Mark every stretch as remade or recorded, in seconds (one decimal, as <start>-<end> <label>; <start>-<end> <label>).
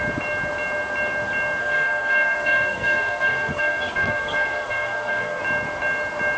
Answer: 0.0-1.6 recorded; 1.6-5.4 remade; 5.4-6.4 recorded